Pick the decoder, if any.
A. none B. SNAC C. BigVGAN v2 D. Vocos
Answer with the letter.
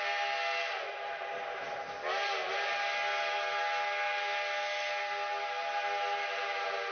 A